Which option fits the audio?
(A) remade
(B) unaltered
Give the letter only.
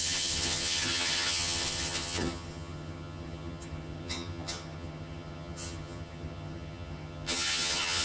A